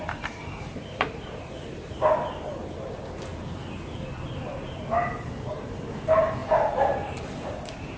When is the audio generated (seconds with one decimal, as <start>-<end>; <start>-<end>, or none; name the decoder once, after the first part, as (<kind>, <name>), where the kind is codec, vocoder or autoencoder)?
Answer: 0.0-3.3 (vocoder, BigVGAN v2); 5.5-8.0